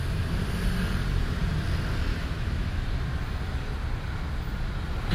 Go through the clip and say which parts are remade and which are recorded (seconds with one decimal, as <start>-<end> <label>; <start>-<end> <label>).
0.0-2.1 recorded; 2.1-2.8 remade; 2.8-5.1 recorded